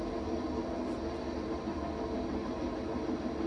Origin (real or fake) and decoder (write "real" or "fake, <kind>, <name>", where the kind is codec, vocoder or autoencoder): real